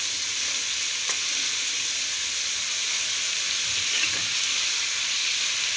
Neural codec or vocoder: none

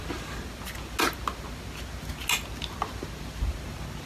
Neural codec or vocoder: none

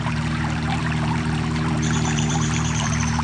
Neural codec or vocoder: vocoder, BigVGAN v2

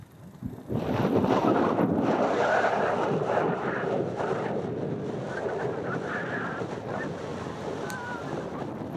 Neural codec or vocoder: none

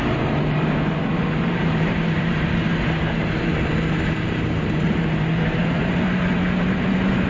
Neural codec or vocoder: vocoder, BigVGAN v2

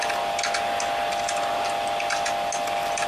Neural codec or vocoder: none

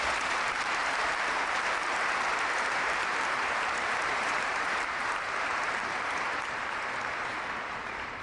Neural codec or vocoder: vocoder, BigVGAN v2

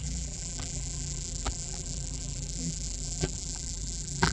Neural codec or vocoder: vocoder, BigVGAN v2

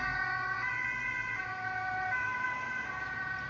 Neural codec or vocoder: none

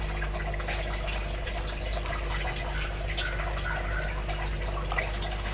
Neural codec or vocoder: none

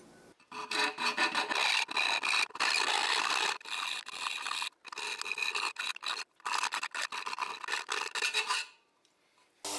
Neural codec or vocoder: none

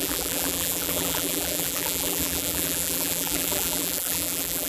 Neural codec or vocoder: vocoder, BigVGAN v2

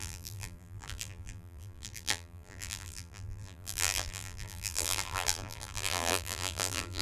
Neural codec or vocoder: vocoder, BigVGAN v2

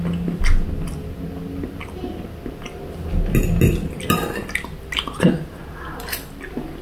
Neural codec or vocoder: none